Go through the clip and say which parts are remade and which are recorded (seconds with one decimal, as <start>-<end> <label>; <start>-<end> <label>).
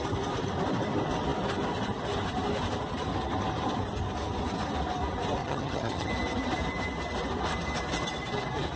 0.0-5.4 recorded; 5.4-6.1 remade; 6.1-8.8 recorded